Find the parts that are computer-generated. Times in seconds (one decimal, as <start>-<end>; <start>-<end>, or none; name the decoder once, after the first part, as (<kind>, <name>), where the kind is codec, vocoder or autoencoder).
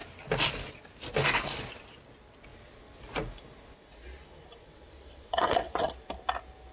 4.6-5.9 (vocoder, WaveNeXt)